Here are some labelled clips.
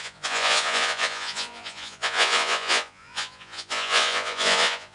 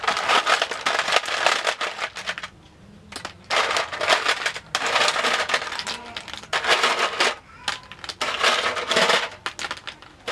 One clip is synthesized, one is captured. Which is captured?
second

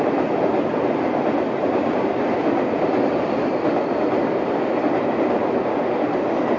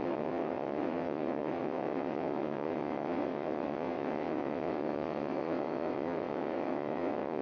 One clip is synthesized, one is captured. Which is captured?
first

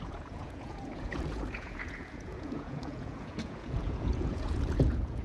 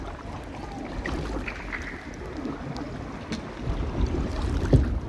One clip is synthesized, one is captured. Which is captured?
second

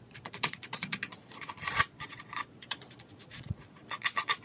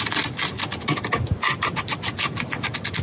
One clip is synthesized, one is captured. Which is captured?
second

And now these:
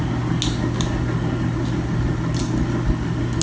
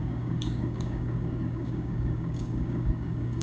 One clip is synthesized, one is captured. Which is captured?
first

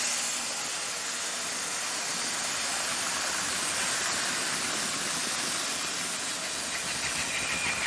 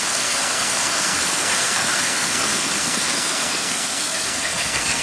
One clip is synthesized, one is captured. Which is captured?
first